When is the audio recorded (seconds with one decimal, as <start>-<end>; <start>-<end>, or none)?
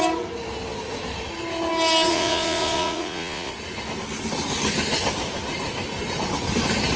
0.0-2.1; 3.5-7.0